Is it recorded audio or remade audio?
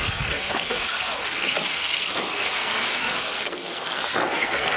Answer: remade